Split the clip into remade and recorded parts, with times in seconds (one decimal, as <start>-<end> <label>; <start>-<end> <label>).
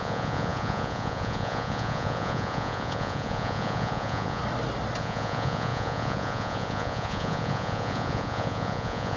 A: 0.0-4.4 remade; 4.4-5.0 recorded; 5.0-9.2 remade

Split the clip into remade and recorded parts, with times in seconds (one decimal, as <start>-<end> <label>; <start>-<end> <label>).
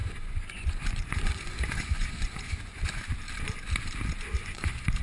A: 0.0-3.0 remade; 3.0-4.4 recorded; 4.4-5.0 remade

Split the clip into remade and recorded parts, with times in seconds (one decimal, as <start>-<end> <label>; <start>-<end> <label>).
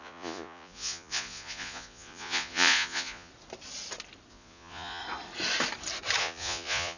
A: 0.0-3.3 remade; 3.3-4.3 recorded; 4.3-5.0 remade; 5.0-6.2 recorded; 6.2-7.0 remade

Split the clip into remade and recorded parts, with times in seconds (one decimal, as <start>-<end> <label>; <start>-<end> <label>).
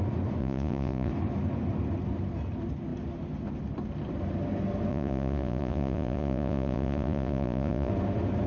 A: 0.0-0.4 recorded; 0.4-1.1 remade; 1.1-4.9 recorded; 4.9-7.9 remade; 7.9-8.5 recorded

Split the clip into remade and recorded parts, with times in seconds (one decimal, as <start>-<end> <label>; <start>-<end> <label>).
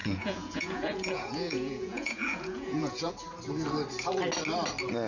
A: 0.0-3.1 remade; 3.1-5.1 recorded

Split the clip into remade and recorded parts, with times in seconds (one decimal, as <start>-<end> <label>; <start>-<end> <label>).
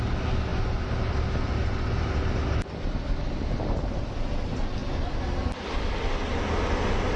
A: 0.0-7.2 recorded